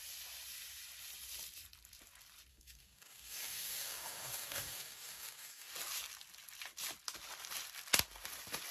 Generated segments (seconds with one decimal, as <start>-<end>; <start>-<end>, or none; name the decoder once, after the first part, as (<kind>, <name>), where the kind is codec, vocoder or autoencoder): 2.5-5.7 (codec, DAC)